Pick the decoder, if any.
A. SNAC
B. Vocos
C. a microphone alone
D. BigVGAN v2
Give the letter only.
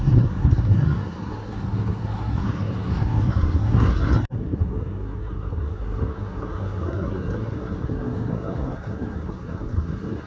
A